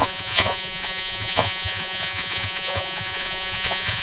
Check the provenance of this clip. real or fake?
fake